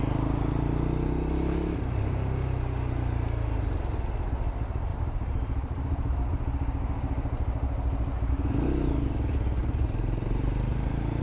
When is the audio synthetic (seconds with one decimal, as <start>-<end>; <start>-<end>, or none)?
4.9-8.3; 9.6-11.2